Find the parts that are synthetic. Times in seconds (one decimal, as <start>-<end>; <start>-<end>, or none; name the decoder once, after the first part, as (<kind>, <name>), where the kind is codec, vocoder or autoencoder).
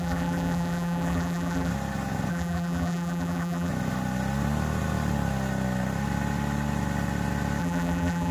0.0-1.7 (vocoder, BigVGAN v2); 2.3-3.7; 7.6-8.3